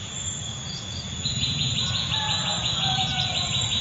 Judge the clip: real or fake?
fake